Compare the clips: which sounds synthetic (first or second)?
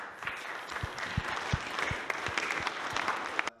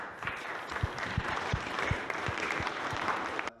second